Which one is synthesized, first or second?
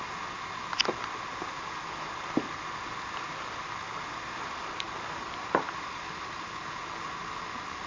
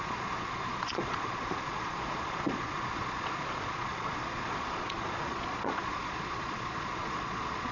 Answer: second